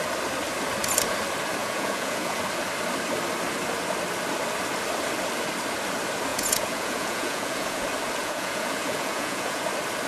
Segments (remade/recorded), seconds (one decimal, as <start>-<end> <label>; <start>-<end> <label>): 0.0-1.6 recorded; 1.6-2.4 remade; 2.4-6.3 recorded; 6.3-7.8 remade; 7.8-8.2 recorded; 8.2-9.6 remade; 9.6-10.1 recorded